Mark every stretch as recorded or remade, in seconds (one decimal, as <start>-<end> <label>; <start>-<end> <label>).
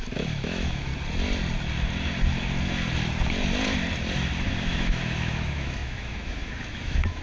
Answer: 0.0-0.9 remade; 0.9-4.4 recorded; 4.4-7.2 remade